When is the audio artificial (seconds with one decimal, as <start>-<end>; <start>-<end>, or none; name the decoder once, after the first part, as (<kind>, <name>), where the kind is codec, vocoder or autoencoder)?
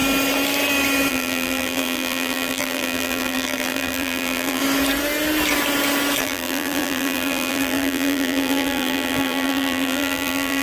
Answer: 1.1-4.6 (vocoder, BigVGAN v2); 6.2-10.6